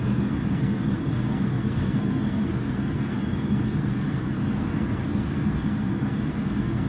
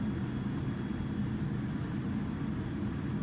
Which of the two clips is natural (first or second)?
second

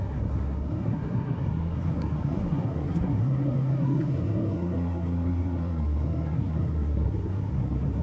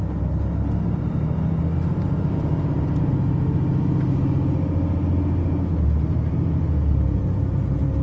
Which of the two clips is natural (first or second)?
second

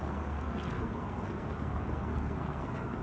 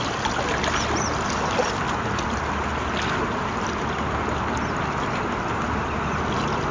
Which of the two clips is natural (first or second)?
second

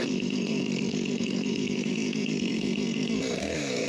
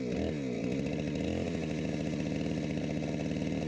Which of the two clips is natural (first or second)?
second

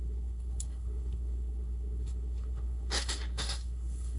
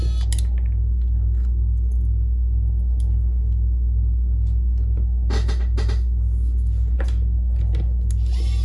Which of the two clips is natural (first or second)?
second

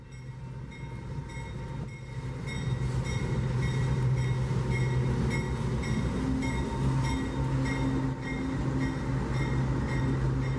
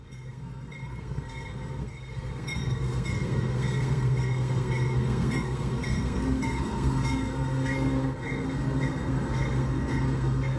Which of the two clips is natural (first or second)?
first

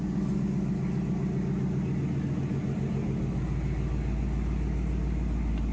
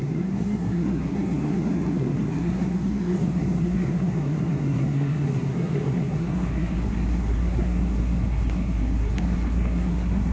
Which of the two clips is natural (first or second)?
first